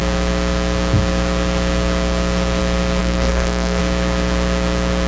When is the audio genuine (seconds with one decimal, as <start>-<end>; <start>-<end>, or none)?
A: 0.0-3.0; 3.8-5.1